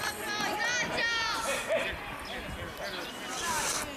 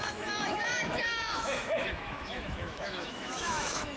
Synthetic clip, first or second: second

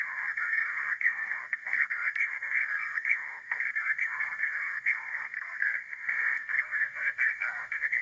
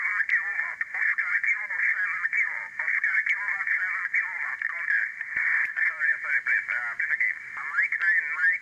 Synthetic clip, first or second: first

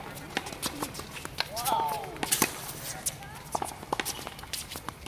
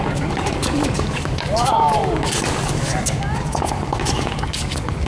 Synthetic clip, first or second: second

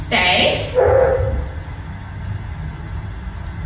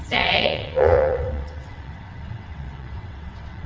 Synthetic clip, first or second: second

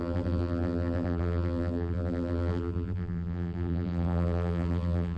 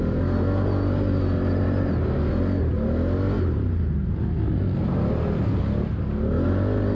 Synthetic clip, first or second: first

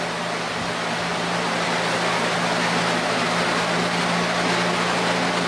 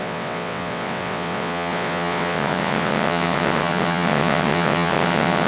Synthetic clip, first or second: second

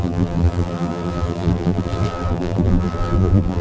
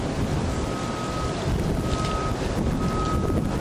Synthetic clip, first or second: first